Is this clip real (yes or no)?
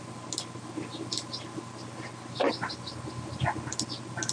yes